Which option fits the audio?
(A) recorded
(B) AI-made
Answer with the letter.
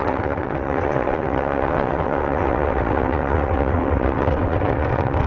B